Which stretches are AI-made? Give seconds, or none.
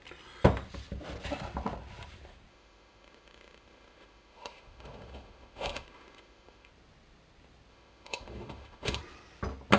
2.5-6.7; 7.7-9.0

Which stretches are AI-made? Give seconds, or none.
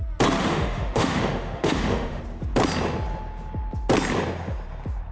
0.4-2.2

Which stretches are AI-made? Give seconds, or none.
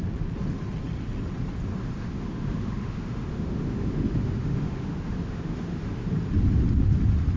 1.7-6.1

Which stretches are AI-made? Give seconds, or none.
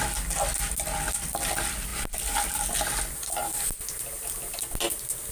none